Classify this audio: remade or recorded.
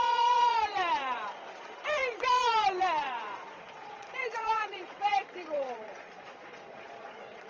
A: remade